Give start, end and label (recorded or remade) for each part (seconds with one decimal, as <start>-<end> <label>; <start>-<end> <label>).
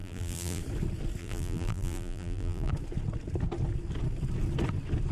0.0-0.6 remade; 0.6-1.2 recorded; 1.2-2.7 remade; 2.7-5.1 recorded